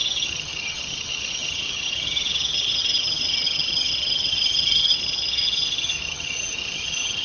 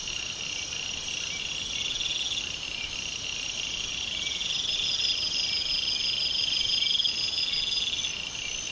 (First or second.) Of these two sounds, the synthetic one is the first